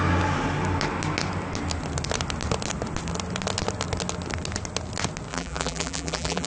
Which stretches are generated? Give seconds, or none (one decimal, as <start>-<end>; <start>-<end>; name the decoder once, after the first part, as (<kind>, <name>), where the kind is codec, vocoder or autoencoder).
5.3-6.5 (vocoder, BigVGAN v2)